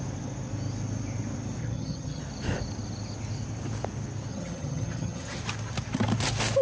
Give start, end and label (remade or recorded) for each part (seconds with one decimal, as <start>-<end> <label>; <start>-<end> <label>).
0.0-1.6 recorded; 1.6-2.2 remade; 2.2-4.3 recorded; 4.3-5.4 remade; 5.4-6.6 recorded